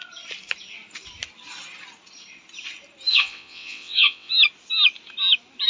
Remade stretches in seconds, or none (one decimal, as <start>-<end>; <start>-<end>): 3.1-4.3